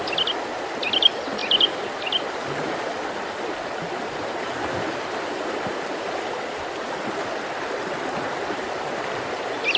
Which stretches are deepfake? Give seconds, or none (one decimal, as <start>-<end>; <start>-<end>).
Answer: 1.4-6.3